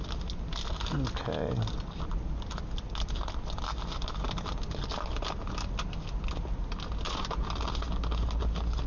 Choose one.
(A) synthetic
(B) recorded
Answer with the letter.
B